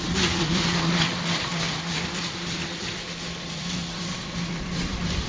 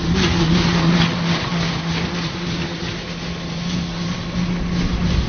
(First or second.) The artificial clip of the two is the first